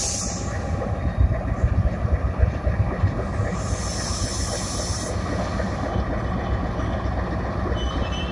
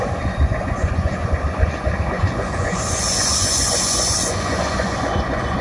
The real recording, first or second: first